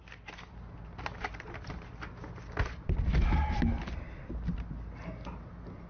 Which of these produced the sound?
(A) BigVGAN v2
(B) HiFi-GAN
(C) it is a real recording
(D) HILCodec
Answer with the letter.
C